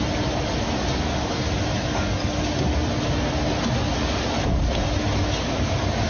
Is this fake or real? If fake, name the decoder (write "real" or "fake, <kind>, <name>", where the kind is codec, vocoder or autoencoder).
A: real